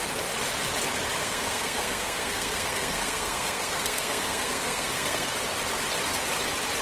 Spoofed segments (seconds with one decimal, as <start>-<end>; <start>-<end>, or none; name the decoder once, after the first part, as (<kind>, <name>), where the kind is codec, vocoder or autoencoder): 1.2-5.3 (codec, SNAC)